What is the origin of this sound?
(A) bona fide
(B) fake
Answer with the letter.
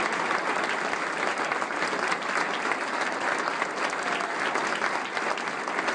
A